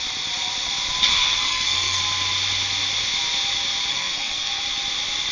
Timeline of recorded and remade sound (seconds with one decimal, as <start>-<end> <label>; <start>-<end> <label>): 0.0-1.1 recorded; 1.1-2.0 remade; 2.0-3.9 recorded; 3.9-4.6 remade; 4.6-5.3 recorded